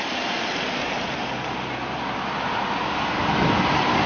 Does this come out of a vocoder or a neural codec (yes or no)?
no